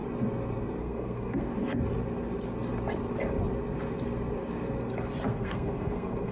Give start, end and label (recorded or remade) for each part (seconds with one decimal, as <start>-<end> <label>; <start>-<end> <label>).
0.0-0.8 recorded; 0.8-1.5 remade; 1.5-5.3 recorded; 5.3-6.3 remade

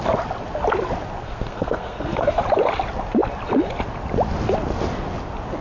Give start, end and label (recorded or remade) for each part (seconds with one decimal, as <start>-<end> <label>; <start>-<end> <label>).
0.0-1.2 recorded; 1.2-2.4 remade; 2.4-5.6 recorded

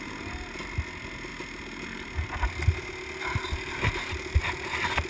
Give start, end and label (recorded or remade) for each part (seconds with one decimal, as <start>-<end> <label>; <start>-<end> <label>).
0.0-5.1 recorded

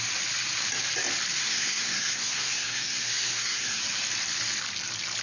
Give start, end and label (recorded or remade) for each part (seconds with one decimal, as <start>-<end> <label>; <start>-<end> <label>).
0.0-1.4 recorded; 1.4-3.8 remade; 3.8-5.2 recorded

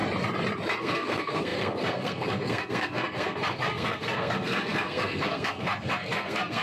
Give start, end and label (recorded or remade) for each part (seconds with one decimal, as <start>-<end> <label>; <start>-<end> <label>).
0.0-0.8 recorded; 0.8-6.6 remade